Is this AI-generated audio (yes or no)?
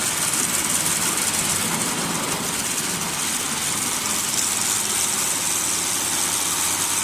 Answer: no